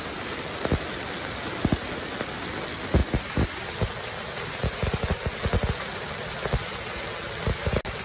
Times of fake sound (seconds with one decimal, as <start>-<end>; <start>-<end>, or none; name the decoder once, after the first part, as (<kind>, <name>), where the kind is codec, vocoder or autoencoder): 3.0-5.4 (vocoder, BigVGAN v2)